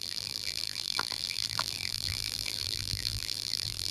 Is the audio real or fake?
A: fake